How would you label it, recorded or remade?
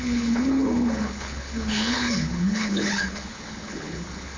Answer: remade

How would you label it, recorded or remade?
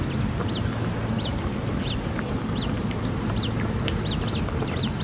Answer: recorded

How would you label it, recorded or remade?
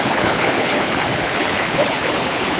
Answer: remade